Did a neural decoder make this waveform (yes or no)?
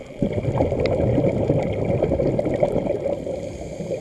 no